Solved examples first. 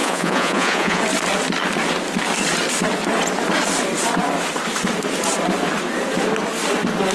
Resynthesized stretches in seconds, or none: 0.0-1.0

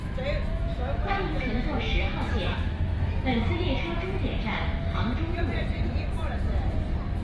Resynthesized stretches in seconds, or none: 0.5-3.8